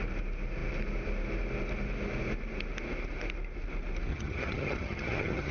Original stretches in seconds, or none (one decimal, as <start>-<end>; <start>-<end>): 0.0-4.1